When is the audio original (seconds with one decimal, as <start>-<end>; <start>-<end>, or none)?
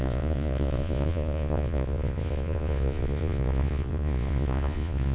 none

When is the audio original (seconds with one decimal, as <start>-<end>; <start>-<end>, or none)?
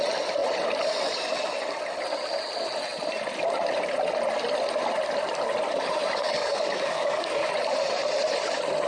0.0-6.4; 7.5-8.9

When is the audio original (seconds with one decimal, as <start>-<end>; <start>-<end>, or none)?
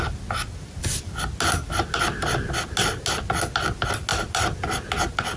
0.0-5.4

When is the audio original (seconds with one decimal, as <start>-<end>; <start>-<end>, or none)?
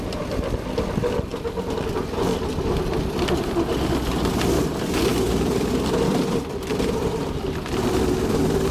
0.0-5.1; 8.0-8.7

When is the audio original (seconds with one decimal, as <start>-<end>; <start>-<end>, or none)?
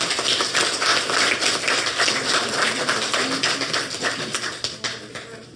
0.0-5.6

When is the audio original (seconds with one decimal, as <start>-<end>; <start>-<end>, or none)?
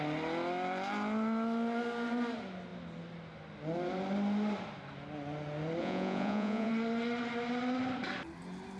0.0-5.8; 6.7-8.8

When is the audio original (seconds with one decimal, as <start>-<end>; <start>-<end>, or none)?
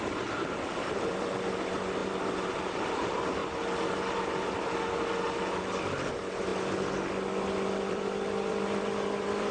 3.4-6.1; 6.5-7.8